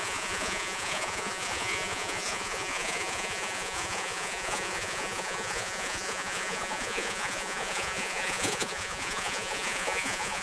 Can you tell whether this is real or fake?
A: fake